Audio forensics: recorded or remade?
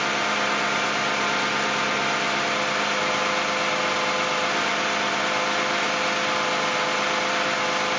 recorded